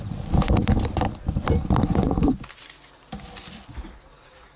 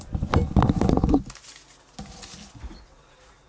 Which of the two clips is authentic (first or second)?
second